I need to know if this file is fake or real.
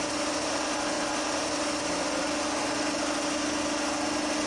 real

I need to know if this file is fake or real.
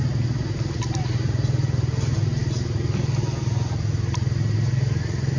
real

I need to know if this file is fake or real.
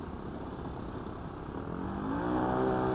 real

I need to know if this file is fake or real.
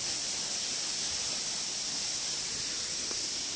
real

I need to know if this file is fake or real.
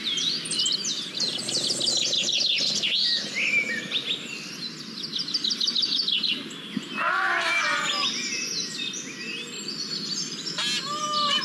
real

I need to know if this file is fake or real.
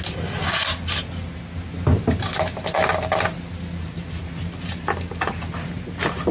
real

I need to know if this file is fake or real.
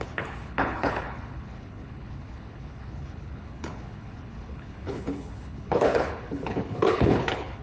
fake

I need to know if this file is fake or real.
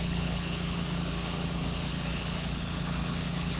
fake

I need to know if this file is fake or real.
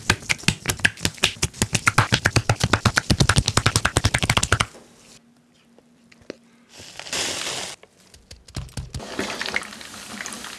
real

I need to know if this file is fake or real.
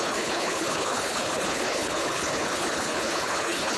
fake